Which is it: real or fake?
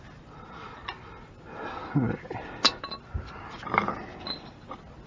real